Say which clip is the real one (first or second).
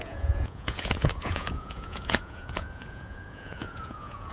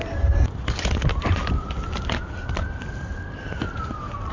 second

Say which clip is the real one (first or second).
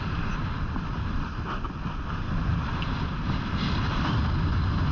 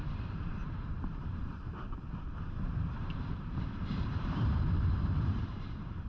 first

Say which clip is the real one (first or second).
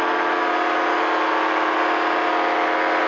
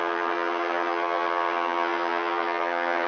first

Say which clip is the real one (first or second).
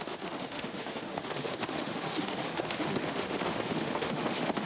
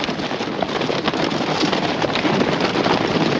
second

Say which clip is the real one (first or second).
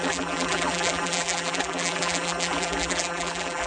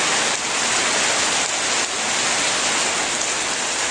second